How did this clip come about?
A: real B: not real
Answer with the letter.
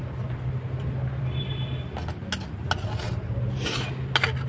A